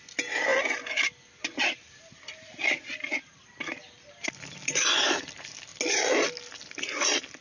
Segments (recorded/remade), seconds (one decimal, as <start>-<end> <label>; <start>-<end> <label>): 0.0-5.7 remade; 5.7-6.5 recorded; 6.5-7.4 remade